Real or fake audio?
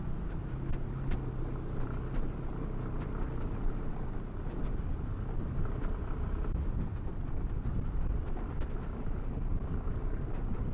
real